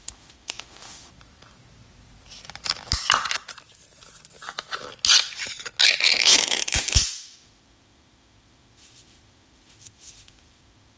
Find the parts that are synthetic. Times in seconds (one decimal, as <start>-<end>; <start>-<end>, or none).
0.0-1.1; 6.1-11.0